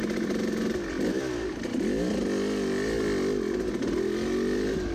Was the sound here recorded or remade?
recorded